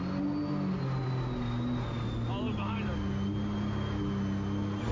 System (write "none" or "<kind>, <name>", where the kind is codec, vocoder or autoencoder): none